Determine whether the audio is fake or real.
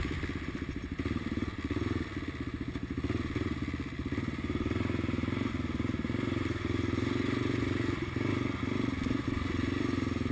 real